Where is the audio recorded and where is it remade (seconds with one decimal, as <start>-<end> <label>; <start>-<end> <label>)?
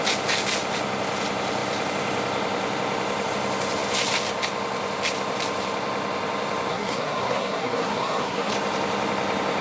0.0-6.7 recorded; 6.7-8.5 remade; 8.5-9.6 recorded